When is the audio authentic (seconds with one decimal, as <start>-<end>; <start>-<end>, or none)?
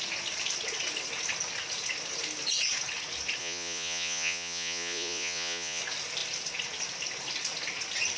0.0-3.4; 5.8-8.2